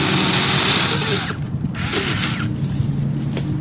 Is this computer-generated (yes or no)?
no